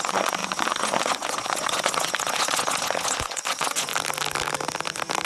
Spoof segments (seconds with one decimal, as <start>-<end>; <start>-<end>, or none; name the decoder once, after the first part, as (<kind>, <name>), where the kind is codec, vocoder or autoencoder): 0.0-3.9 (vocoder, Vocos)